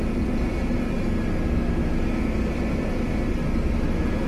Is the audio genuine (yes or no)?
yes